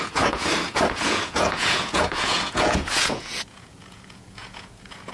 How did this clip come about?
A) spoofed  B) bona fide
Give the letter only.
A